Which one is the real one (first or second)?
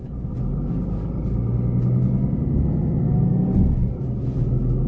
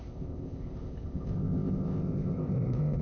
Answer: first